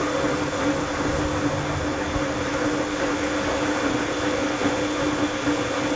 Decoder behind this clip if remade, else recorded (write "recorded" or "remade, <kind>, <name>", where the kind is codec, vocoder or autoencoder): recorded